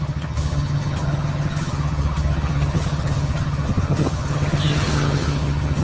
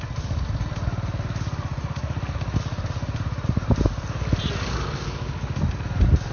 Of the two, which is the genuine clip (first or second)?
second